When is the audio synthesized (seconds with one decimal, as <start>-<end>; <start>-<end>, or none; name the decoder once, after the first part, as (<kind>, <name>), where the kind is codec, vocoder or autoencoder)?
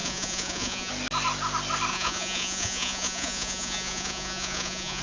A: 0.0-0.9 (vocoder, Vocos); 1.9-5.0